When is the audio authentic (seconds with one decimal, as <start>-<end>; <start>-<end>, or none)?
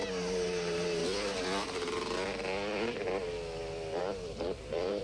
1.0-4.0